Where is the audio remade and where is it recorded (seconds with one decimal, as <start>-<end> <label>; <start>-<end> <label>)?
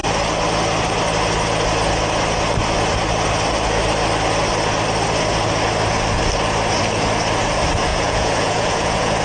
0.0-7.9 recorded; 7.9-9.2 remade